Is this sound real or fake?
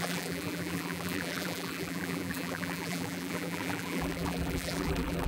fake